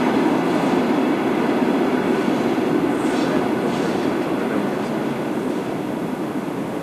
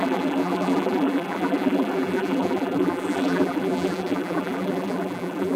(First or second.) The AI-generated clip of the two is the second